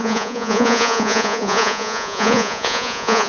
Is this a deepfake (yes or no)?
yes